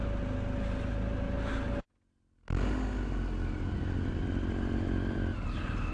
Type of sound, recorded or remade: recorded